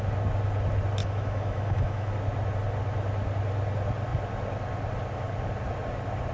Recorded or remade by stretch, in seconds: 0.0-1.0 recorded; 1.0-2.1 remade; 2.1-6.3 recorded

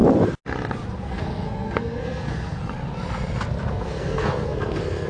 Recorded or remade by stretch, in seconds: 0.0-1.0 recorded; 1.0-2.6 remade; 2.6-3.7 recorded; 3.7-5.1 remade

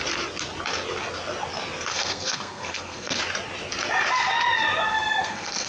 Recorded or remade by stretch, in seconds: 0.0-1.9 recorded; 1.9-3.2 remade; 3.2-4.9 recorded; 4.9-5.7 remade

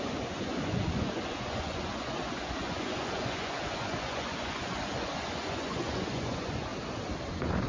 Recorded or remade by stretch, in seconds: 0.0-6.7 remade; 6.7-7.3 recorded; 7.3-7.7 remade

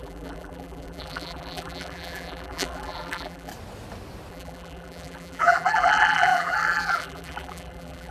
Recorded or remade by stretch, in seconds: 0.0-3.5 remade; 3.5-4.3 recorded; 4.3-8.1 remade

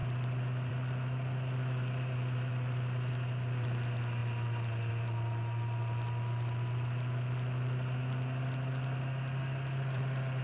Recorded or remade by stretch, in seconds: 0.0-10.4 recorded

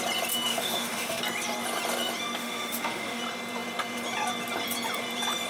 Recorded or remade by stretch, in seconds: 0.0-0.5 recorded; 0.5-1.2 remade; 1.2-2.4 recorded; 2.4-3.2 remade; 3.2-5.5 recorded